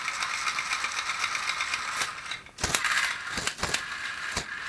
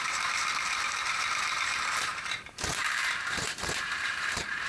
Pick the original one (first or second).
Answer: first